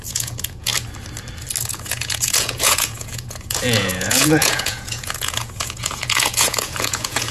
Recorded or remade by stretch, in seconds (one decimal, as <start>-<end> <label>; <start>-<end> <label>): 0.0-0.7 remade; 0.7-1.6 recorded; 1.6-7.3 remade